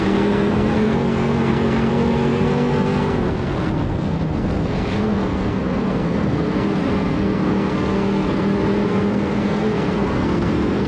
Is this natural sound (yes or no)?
no